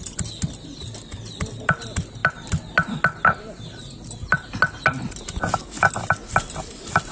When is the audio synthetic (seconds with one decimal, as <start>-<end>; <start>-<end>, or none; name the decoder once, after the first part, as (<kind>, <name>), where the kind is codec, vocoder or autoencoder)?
none